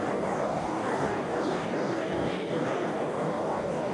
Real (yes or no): no